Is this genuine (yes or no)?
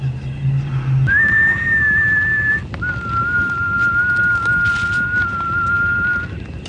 yes